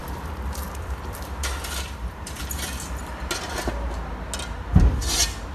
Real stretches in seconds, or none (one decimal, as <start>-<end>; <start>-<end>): 3.3-5.5